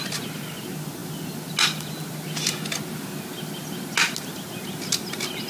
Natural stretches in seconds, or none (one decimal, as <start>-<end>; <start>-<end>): 0.0-5.5

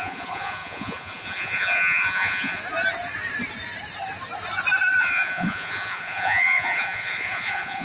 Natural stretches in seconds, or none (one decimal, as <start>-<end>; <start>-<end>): 2.6-5.0

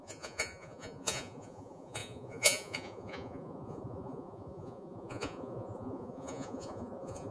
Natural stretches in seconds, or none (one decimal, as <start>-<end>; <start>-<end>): none

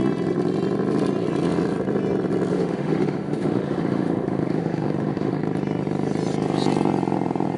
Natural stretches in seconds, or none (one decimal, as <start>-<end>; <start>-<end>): 0.0-2.5; 5.4-7.6

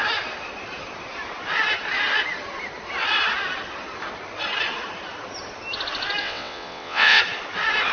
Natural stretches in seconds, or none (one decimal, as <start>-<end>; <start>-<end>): 0.0-6.2; 7.2-7.9

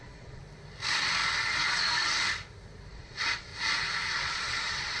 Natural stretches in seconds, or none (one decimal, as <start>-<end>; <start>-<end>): 0.4-2.9; 3.5-4.1

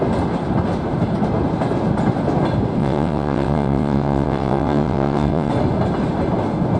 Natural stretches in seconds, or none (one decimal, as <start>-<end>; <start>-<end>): 0.0-2.8; 5.5-6.8